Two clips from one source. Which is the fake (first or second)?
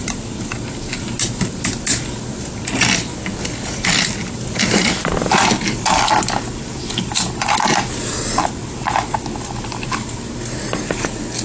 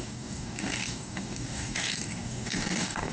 second